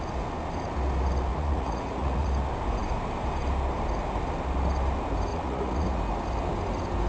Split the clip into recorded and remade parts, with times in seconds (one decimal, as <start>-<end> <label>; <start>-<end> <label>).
0.0-1.3 recorded; 1.3-2.3 remade; 2.3-5.3 recorded; 5.3-6.0 remade; 6.0-7.1 recorded